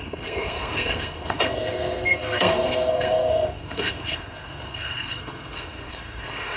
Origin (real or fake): fake